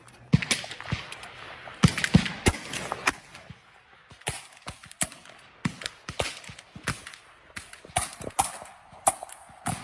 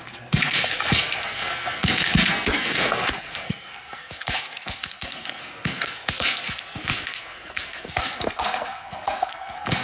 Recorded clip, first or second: first